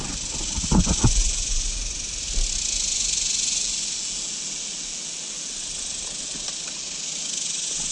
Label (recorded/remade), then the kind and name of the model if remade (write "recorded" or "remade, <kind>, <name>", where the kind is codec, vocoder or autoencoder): recorded